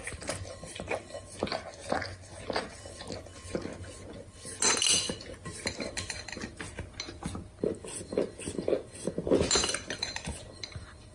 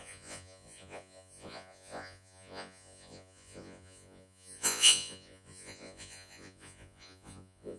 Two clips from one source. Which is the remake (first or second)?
second